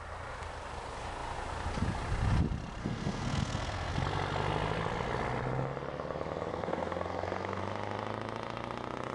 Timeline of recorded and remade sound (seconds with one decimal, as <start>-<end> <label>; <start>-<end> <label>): 0.0-2.8 recorded; 2.8-3.9 remade; 3.9-6.5 recorded; 6.5-7.6 remade; 7.6-9.1 recorded